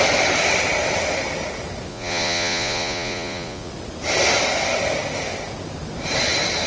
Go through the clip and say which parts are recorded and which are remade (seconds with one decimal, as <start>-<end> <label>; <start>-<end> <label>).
0.0-1.9 recorded; 1.9-3.7 remade; 3.7-6.7 recorded